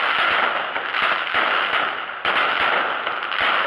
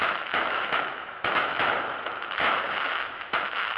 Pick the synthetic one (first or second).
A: second